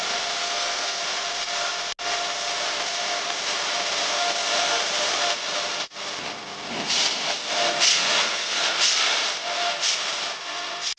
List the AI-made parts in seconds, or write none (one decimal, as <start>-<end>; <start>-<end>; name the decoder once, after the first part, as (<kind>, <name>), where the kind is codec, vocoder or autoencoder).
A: 0.4-1.0 (codec, SNAC); 7.9-8.6